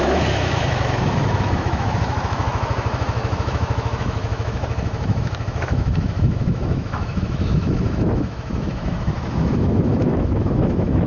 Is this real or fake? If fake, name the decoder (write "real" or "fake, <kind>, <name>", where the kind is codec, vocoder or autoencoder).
fake, autoencoder, DAC-VAE